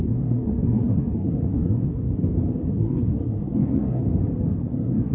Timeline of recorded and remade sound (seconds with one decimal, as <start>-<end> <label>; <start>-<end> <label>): 0.0-2.1 remade; 2.1-2.7 recorded; 2.7-4.0 remade; 4.0-4.6 recorded; 4.6-5.1 remade